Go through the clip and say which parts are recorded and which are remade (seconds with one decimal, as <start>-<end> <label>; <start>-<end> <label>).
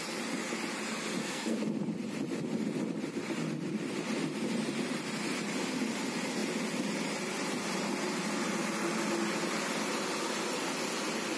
0.0-1.2 recorded; 1.2-1.7 remade; 1.7-11.4 recorded